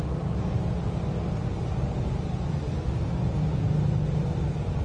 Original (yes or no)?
yes